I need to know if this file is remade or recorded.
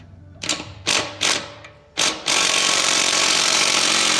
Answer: remade